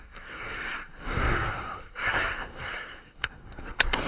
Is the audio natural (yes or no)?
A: no